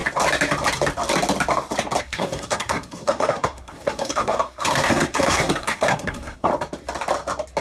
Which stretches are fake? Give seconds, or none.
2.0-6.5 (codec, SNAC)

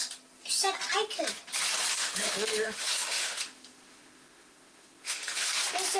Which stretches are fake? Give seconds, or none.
1.9-5.5 (autoencoder, DAC-VAE)

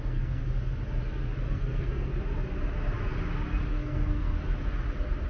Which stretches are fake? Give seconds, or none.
0.0-0.4 (codec, SNAC); 1.5-2.1; 3.7-4.4

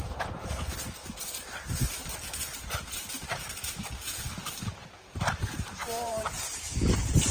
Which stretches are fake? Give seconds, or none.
0.0-7.3 (vocoder, BigVGAN v2)

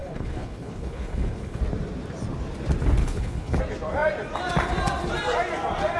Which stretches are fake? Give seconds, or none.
0.0-1.6 (codec, HILCodec); 3.0-3.6

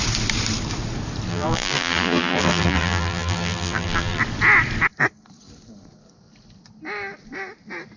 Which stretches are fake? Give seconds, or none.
1.3-4.2 (vocoder, BigVGAN v2)

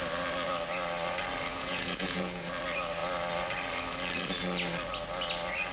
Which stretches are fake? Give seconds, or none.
1.5-2.5 (vocoder, Vocos)

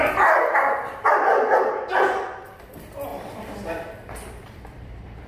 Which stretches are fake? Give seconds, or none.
3.1-5.3 (vocoder, BigVGAN v2)